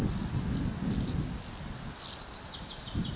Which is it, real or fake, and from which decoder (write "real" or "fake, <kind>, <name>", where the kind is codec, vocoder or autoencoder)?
real